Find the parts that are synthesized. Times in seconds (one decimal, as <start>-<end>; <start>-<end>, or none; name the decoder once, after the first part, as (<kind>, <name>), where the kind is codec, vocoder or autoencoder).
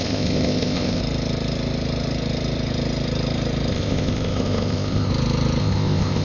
0.0-1.0 (codec, ZipCodec); 3.7-5.1; 5.6-6.2